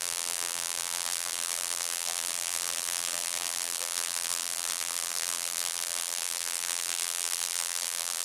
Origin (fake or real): fake